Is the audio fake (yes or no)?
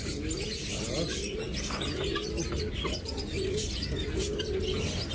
no